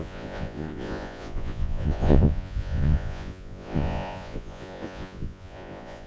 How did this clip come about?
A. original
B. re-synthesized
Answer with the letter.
B